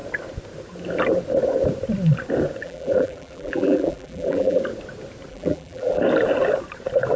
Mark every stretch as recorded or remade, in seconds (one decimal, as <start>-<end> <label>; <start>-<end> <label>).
0.0-2.6 recorded; 2.6-4.6 remade; 4.6-5.3 recorded; 5.3-6.0 remade; 6.0-7.2 recorded